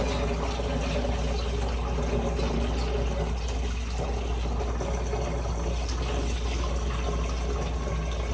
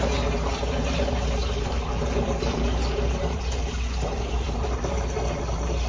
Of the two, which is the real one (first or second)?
first